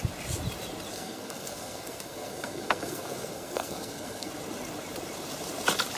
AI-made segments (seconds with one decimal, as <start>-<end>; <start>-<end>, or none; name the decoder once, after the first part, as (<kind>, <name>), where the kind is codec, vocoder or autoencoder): 0.9-4.3 (codec, SNAC)